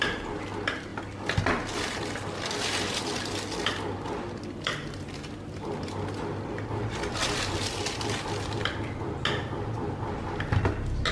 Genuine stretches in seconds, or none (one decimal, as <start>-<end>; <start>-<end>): 0.0-11.1